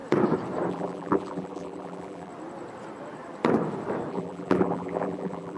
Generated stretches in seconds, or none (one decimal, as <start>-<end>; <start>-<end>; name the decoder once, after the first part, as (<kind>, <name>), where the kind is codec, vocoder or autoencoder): 0.7-2.3 (vocoder, BigVGAN v2); 4.1-5.6